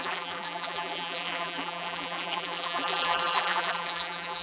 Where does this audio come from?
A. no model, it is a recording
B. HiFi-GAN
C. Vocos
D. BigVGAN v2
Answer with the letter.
D